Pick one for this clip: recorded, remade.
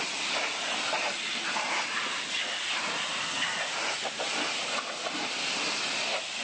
recorded